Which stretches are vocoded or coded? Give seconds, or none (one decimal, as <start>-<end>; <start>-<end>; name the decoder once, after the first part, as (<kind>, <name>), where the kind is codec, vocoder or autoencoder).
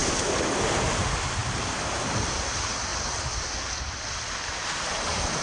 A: none